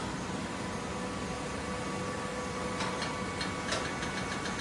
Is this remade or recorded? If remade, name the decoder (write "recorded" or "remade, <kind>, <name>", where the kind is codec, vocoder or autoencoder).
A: recorded